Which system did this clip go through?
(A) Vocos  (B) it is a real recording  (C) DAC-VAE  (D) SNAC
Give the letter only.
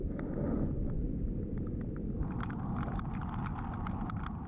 B